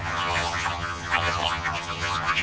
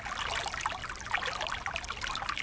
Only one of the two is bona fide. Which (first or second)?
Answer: second